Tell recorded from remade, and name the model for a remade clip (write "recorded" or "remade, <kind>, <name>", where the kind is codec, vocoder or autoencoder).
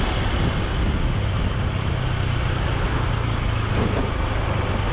recorded